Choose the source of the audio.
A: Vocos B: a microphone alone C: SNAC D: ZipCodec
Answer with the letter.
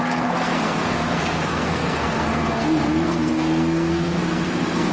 C